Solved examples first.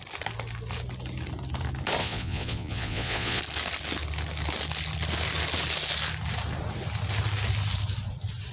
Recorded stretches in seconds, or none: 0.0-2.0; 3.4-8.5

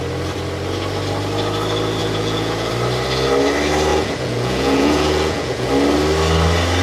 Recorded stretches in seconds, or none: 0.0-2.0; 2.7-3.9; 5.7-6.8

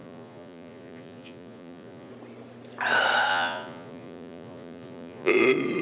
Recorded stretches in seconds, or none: 2.1-3.3; 5.3-5.8

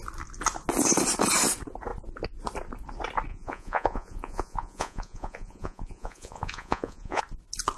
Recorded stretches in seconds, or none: 0.0-3.3; 7.2-7.8